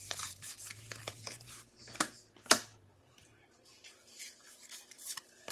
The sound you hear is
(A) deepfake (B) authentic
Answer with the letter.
A